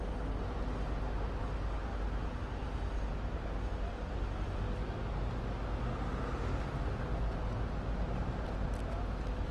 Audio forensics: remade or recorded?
recorded